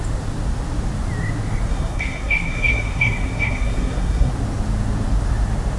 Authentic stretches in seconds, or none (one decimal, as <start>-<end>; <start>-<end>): 0.0-1.7; 4.3-5.8